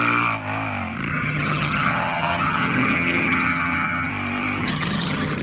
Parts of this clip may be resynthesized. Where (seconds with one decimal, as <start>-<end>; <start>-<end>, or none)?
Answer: 1.1-4.1; 4.6-5.4